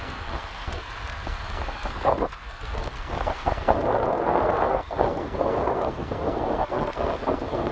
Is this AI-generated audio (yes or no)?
yes